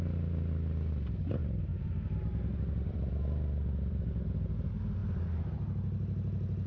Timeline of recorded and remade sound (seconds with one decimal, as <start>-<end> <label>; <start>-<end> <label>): 0.0-1.4 recorded; 1.4-4.0 remade; 4.0-6.7 recorded